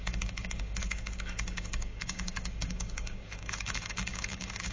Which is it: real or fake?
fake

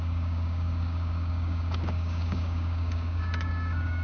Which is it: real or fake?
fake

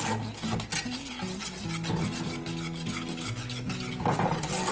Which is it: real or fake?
real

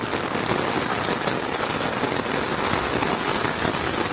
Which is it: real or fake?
real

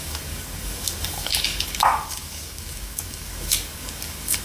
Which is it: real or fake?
fake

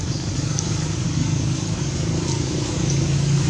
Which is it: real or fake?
fake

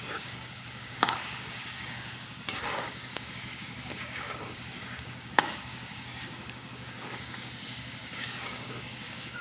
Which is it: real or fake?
fake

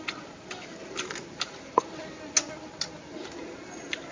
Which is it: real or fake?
real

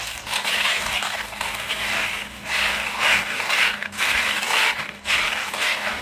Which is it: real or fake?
fake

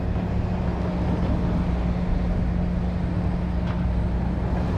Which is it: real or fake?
real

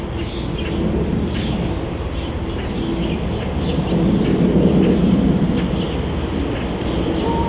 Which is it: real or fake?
real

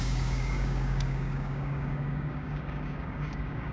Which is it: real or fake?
fake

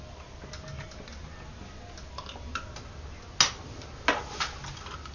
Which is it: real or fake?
real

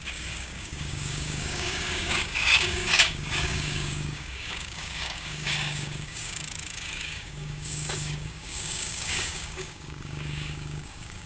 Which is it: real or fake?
fake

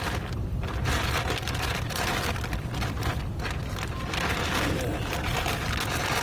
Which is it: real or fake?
real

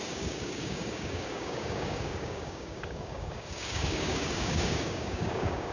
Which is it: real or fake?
fake